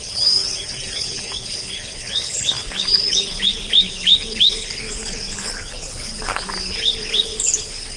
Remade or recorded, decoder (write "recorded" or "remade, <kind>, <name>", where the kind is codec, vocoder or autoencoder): remade, codec, HILCodec